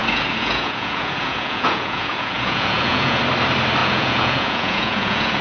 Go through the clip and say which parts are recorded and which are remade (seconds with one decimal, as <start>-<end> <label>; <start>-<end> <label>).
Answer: 0.0-3.2 remade; 3.2-3.8 recorded; 3.8-5.4 remade

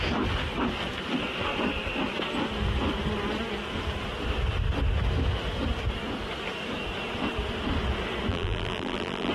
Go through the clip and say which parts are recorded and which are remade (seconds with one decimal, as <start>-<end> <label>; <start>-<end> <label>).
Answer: 0.0-8.3 recorded; 8.3-9.3 remade

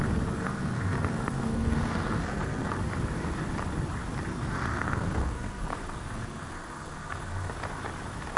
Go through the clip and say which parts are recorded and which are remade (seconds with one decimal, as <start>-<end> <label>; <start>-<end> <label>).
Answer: 0.0-0.4 recorded; 0.4-2.8 remade; 2.8-4.3 recorded; 4.3-7.5 remade; 7.5-8.4 recorded

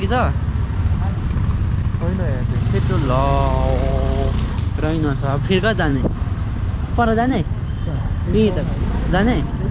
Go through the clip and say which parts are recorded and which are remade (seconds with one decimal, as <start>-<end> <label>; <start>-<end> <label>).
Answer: 0.0-5.9 recorded; 5.9-6.9 remade; 6.9-9.7 recorded

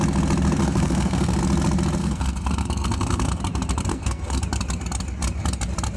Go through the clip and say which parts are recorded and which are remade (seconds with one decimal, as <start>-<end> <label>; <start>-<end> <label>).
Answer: 0.0-0.6 recorded; 0.6-1.4 remade; 1.4-2.0 recorded; 2.0-3.4 remade; 3.4-3.9 recorded; 3.9-4.4 remade; 4.4-6.0 recorded

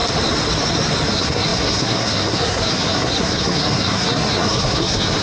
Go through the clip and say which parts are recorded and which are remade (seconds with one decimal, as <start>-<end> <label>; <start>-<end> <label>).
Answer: 0.0-1.1 recorded; 1.1-5.2 remade

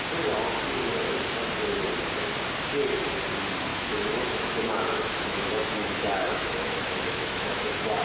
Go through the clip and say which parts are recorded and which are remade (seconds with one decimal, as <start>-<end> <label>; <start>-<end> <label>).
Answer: 0.0-3.7 recorded; 3.7-8.0 remade

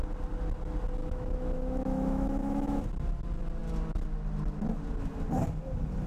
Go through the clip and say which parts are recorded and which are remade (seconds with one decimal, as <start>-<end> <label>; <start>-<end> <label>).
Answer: 0.0-1.0 recorded; 1.0-2.8 remade; 2.8-6.1 recorded